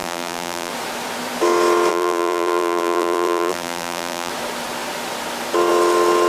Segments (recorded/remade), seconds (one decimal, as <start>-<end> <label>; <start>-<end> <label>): 0.0-0.7 remade; 0.7-1.9 recorded; 1.9-4.3 remade; 4.3-6.3 recorded